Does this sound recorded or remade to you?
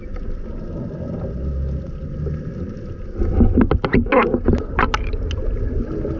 recorded